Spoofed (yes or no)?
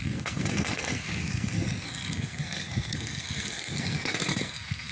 yes